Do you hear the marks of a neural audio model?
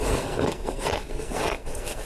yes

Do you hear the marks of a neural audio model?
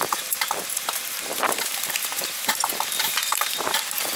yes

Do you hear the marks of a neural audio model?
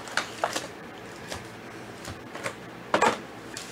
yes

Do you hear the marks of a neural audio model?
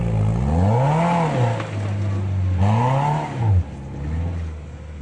no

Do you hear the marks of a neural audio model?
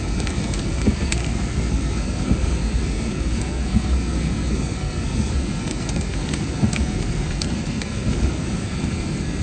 yes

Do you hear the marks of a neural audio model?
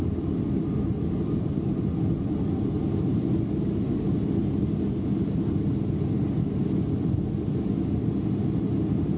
no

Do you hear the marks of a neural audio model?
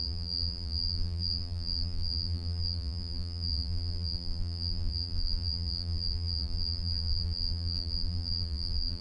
yes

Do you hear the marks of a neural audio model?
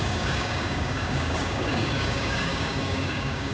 yes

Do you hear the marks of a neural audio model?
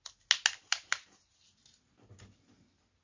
no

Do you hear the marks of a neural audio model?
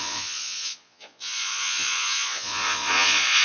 yes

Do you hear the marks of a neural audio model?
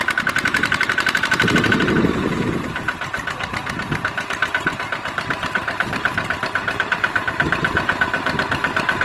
yes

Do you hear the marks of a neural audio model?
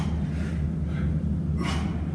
no